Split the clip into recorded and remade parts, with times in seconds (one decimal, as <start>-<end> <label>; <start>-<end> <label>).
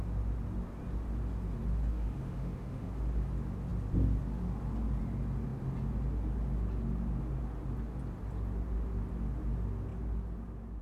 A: 0.0-1.9 recorded; 1.9-2.9 remade; 2.9-10.8 recorded